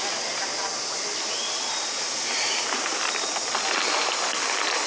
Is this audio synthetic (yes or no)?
no